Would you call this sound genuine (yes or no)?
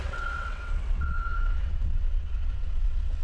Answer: no